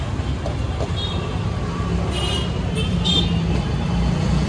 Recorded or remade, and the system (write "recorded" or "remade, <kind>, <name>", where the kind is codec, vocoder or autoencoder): recorded